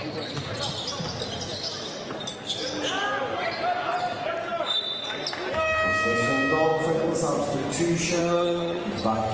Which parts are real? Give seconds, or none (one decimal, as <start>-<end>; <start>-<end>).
0.0-8.2; 8.8-9.3